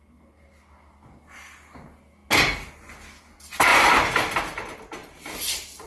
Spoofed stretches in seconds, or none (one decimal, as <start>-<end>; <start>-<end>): 5.0-5.5